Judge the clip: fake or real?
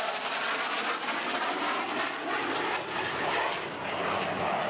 real